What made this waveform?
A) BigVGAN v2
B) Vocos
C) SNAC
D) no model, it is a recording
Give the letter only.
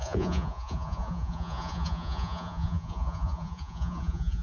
B